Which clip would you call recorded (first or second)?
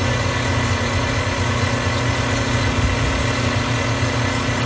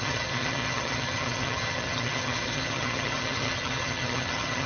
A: first